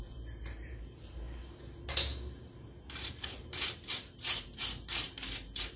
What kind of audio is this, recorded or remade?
remade